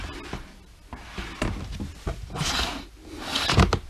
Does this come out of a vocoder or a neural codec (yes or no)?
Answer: no